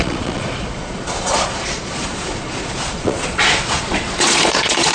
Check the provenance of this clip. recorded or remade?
remade